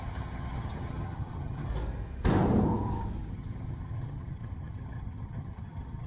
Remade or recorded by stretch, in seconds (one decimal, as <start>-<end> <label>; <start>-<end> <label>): 0.0-1.7 remade; 1.7-3.3 recorded; 3.3-6.1 remade